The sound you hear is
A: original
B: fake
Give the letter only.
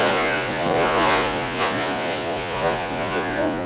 B